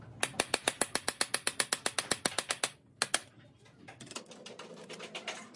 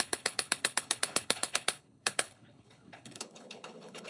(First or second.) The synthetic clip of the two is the second